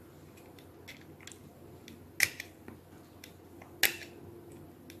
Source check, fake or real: real